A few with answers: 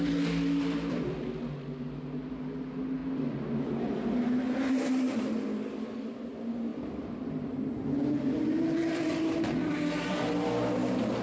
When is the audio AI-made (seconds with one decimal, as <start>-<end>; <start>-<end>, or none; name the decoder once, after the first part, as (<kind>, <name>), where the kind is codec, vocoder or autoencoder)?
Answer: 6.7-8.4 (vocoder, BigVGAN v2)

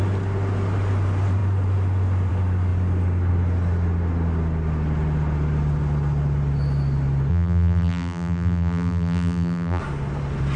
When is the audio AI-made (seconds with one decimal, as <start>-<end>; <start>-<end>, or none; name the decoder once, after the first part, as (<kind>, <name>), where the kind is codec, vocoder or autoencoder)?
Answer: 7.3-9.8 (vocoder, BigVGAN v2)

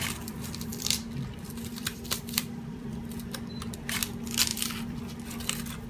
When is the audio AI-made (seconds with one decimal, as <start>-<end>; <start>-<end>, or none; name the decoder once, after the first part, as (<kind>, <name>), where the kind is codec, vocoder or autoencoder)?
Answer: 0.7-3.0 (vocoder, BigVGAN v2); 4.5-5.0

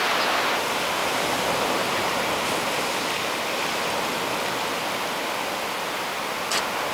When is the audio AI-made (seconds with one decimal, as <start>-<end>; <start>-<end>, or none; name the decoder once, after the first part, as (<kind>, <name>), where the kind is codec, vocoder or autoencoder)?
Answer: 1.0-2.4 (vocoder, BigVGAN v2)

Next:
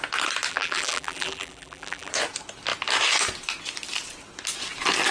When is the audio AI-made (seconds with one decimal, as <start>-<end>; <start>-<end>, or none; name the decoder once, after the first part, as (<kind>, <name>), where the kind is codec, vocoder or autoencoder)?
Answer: 0.5-2.1 (vocoder, BigVGAN v2)

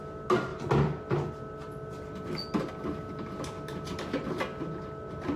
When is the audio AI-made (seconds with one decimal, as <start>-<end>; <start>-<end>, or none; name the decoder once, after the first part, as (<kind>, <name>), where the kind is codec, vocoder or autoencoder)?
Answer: none

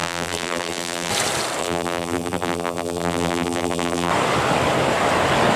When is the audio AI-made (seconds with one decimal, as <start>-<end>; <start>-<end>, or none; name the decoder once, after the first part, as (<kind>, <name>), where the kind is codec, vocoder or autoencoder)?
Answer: 0.0-1.1 (vocoder, BigVGAN v2); 1.6-4.1

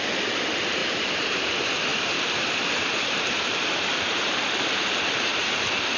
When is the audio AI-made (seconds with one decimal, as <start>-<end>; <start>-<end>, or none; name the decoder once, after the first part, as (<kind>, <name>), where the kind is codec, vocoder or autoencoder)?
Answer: 0.8-1.5 (vocoder, BigVGAN v2); 1.9-5.5